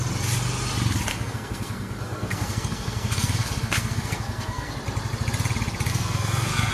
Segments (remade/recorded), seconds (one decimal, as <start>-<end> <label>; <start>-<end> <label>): 0.0-1.1 recorded; 1.1-4.7 remade; 4.7-5.9 recorded; 5.9-6.7 remade